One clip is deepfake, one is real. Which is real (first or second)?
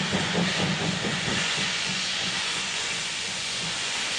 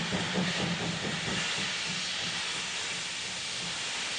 second